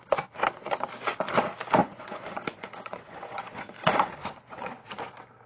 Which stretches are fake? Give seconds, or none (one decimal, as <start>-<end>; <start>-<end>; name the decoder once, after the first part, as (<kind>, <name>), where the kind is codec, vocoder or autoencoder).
1.8-4.8 (vocoder, Vocos)